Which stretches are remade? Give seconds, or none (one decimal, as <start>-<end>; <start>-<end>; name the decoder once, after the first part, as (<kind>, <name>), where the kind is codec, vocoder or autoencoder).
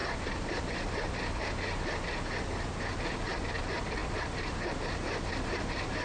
0.0-3.6 (vocoder, BigVGAN v2)